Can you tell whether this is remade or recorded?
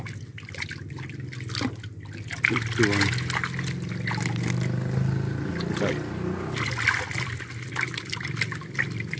recorded